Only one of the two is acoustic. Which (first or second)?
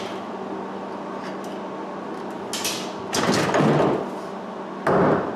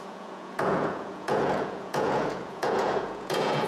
first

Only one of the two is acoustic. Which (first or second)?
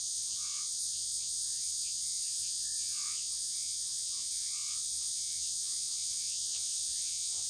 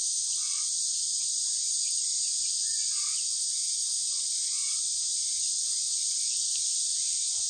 second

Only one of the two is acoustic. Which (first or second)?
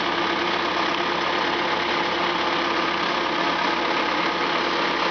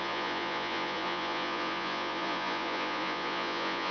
first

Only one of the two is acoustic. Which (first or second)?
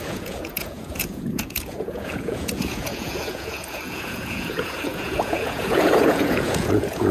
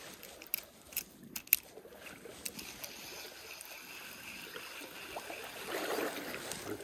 second